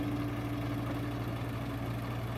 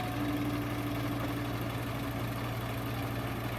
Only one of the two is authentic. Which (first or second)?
first